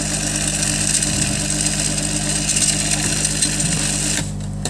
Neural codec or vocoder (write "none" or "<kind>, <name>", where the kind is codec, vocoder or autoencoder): none